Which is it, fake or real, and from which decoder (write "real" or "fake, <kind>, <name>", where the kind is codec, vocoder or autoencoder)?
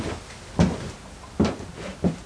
real